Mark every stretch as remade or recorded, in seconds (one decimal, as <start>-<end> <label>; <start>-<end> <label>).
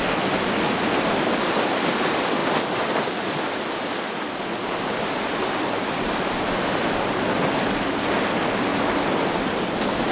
0.0-10.1 recorded